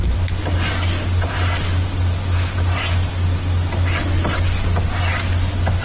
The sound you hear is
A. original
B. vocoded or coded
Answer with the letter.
A